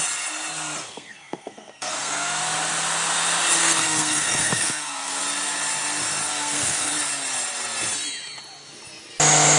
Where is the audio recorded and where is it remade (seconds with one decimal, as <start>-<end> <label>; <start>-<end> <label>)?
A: 0.0-0.8 recorded; 0.8-2.4 remade; 2.4-3.6 recorded; 3.6-5.2 remade; 5.2-6.3 recorded; 6.3-6.9 remade; 6.9-9.6 recorded